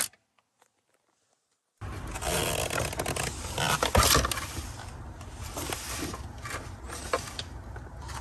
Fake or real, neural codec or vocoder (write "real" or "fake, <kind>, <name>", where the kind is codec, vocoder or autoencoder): real